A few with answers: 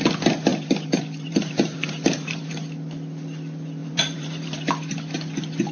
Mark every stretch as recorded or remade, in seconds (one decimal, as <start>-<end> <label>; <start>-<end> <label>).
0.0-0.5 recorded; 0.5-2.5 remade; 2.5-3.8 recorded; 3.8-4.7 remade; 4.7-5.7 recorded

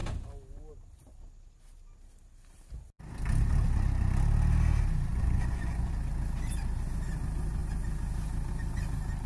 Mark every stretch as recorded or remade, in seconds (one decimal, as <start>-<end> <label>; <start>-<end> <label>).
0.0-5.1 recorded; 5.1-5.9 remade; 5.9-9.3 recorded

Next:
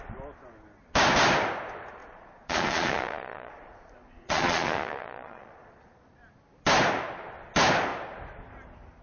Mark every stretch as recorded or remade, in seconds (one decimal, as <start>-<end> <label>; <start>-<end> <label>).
0.0-2.0 recorded; 2.0-6.2 remade; 6.2-9.0 recorded

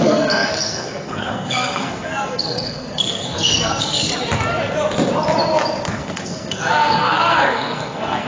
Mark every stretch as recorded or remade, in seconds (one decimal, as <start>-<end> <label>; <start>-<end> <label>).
0.0-4.1 remade; 4.1-5.9 recorded; 5.9-8.3 remade

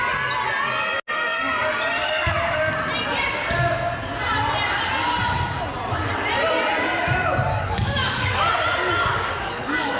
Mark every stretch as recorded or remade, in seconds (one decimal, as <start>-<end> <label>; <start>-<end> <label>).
0.0-7.5 recorded; 7.5-8.5 remade; 8.5-9.0 recorded; 9.0-10.0 remade